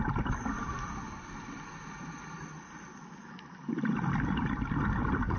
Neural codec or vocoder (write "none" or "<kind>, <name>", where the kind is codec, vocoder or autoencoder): none